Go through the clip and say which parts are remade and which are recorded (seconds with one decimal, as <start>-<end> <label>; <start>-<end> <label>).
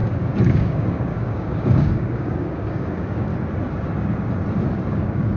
0.0-3.3 remade; 3.3-4.9 recorded; 4.9-5.4 remade